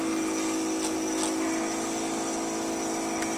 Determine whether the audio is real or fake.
real